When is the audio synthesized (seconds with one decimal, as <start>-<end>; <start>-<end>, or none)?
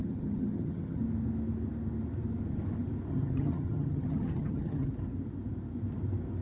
0.0-1.0; 3.1-4.9